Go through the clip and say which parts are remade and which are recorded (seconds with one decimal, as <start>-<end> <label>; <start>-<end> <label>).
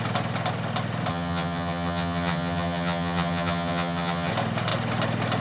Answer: 0.0-1.1 recorded; 1.1-4.3 remade; 4.3-5.4 recorded